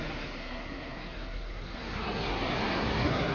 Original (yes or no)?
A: no